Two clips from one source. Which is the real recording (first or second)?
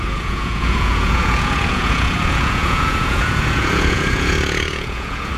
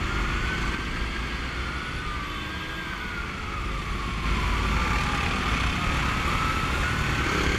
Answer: second